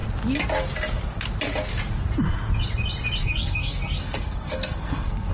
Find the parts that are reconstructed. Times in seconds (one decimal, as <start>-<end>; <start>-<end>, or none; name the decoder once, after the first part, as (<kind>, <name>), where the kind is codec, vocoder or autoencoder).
3.2-5.3 (codec, SNAC)